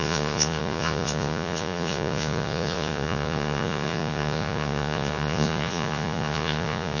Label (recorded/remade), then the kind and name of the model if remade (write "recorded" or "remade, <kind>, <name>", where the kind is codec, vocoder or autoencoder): remade, vocoder, Vocos